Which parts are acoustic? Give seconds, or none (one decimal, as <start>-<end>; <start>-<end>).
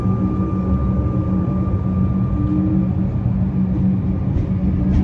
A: 0.0-5.0